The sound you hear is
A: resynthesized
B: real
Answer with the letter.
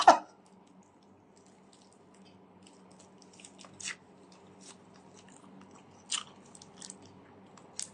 B